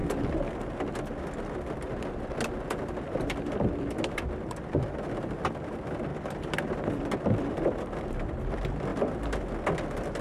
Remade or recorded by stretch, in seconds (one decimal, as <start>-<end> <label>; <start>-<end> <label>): 0.0-4.1 recorded; 4.1-6.1 remade; 6.1-7.4 recorded; 7.4-10.2 remade